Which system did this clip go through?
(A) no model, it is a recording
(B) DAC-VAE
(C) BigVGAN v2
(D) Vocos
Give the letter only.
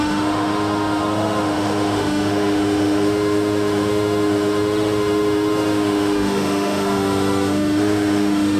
B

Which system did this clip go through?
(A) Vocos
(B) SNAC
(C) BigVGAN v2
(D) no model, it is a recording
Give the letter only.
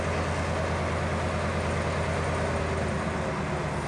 D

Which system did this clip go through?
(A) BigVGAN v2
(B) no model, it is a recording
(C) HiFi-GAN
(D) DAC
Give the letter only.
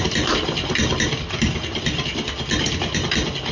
B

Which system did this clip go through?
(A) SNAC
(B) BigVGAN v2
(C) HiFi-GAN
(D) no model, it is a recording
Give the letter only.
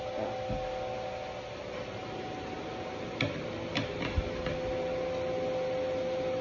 D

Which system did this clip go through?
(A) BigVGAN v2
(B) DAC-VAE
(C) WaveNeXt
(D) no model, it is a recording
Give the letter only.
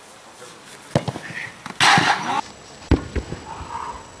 D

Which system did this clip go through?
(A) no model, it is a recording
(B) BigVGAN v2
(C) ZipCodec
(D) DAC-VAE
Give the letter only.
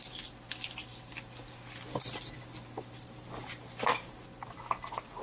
A